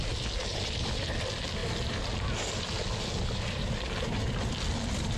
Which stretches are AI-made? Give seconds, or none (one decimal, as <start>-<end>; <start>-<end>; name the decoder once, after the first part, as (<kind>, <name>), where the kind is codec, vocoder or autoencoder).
0.5-1.0 (vocoder, BigVGAN v2)